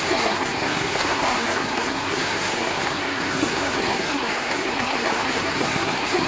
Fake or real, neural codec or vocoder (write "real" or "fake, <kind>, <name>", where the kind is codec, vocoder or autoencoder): fake, codec, SNAC